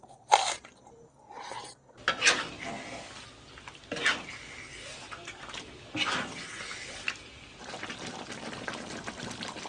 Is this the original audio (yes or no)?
yes